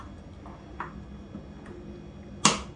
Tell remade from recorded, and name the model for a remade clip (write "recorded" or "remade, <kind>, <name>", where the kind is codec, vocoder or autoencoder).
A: recorded